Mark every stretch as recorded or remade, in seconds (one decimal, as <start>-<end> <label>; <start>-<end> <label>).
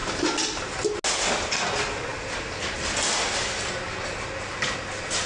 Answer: 0.0-5.3 recorded